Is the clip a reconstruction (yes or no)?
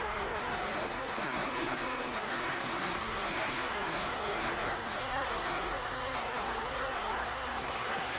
yes